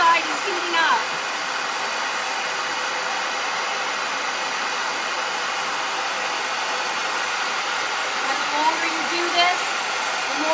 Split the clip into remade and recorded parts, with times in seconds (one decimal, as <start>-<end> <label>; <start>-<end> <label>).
0.0-10.5 recorded